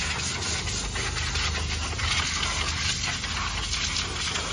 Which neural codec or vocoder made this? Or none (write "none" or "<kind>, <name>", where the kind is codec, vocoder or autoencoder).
none